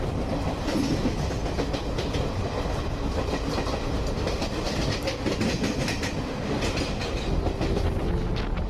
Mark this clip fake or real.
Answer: real